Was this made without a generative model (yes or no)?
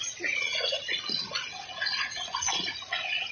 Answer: no